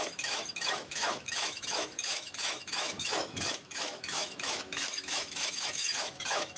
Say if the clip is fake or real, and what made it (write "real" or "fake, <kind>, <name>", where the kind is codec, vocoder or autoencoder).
fake, autoencoder, DAC-VAE